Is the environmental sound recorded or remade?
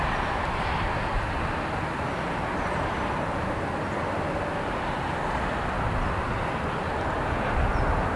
recorded